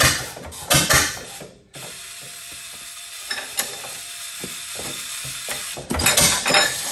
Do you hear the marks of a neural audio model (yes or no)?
no